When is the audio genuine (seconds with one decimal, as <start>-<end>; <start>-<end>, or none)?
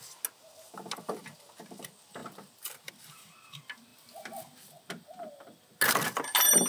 0.0-2.2; 2.9-6.7